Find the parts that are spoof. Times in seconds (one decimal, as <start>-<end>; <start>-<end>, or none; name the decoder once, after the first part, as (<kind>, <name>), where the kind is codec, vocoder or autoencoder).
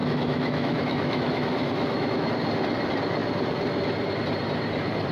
0.0-2.3 (autoencoder, DAC-VAE)